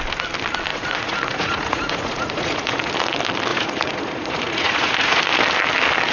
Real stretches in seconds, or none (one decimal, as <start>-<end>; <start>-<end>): 0.0-0.7; 2.9-3.5; 5.2-6.1